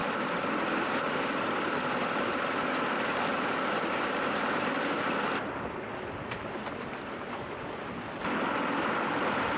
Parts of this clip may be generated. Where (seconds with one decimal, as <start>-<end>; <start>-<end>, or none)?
none